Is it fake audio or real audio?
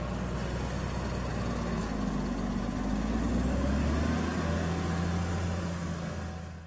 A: real